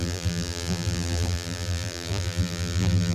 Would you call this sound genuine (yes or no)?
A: no